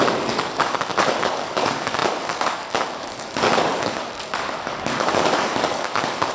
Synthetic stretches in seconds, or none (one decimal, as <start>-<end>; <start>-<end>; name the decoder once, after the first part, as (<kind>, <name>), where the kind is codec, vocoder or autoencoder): 0.0-6.3 (codec, DAC)